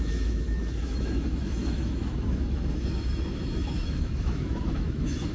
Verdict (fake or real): fake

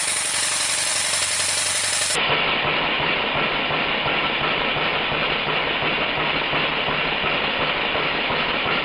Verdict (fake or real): real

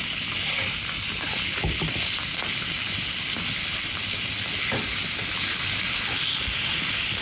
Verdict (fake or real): real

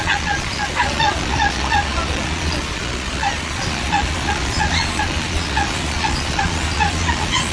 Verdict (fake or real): fake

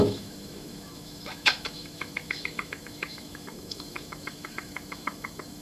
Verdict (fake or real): fake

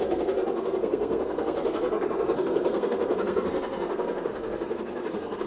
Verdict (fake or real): fake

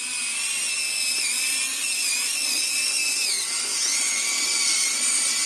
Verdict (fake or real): real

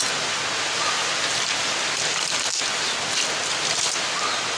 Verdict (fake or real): real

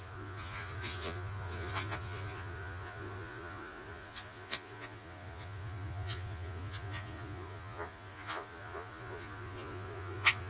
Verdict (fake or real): fake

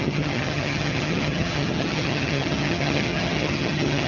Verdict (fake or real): fake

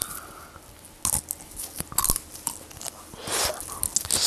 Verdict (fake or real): real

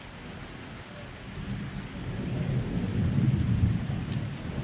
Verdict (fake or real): real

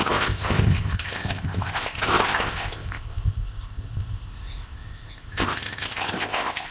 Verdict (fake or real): fake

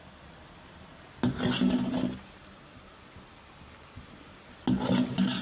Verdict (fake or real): real